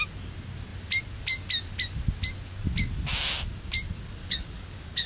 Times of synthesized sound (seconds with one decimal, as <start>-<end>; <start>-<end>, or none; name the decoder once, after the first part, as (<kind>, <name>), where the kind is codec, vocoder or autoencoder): 4.2-5.1 (codec, DAC)